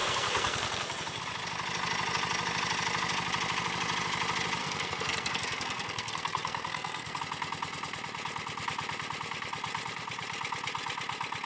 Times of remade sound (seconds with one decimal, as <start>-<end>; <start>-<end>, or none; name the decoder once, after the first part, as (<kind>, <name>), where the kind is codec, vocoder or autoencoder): 0.0-1.2 (codec, SNAC); 4.6-7.2